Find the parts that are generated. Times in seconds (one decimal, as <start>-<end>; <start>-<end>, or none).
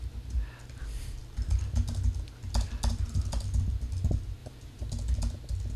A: 4.4-4.9